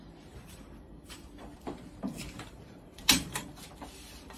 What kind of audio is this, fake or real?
fake